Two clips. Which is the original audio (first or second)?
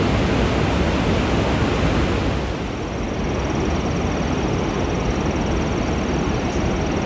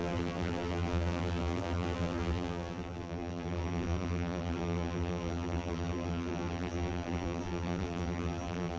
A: first